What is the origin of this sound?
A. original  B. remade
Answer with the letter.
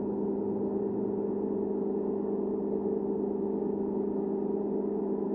A